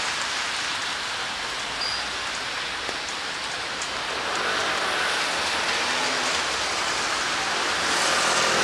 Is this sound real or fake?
real